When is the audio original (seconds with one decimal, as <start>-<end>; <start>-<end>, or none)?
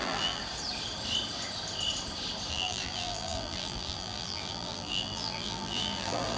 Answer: 0.4-2.5